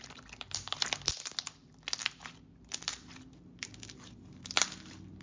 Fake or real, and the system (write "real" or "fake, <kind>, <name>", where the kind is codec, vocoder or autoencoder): real